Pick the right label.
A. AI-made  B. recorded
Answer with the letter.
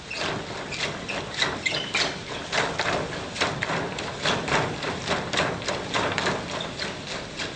B